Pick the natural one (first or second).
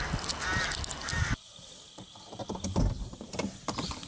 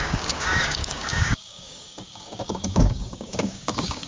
first